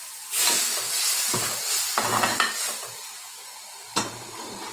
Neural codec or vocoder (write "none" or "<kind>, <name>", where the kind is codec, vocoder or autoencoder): none